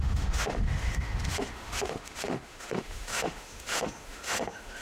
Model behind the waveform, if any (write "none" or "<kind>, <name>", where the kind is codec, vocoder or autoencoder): autoencoder, DAC-VAE